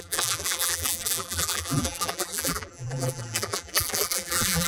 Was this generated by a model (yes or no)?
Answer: yes